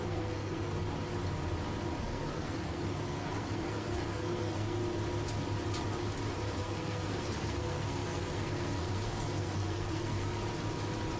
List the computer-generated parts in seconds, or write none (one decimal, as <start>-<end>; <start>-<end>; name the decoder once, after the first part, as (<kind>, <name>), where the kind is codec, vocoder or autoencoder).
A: 0.0-0.7 (codec, SNAC); 2.0-4.8; 6.6-10.4